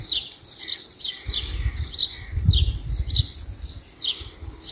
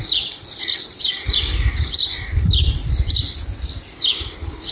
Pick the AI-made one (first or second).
second